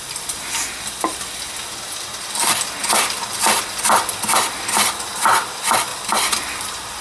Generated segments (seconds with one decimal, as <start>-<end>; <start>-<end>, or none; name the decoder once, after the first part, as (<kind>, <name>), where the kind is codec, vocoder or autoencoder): 0.0-0.5 (vocoder, BigVGAN v2); 4.7-5.9; 6.4-7.0